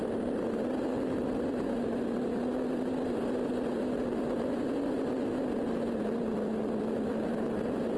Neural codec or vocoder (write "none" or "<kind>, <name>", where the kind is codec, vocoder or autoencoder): none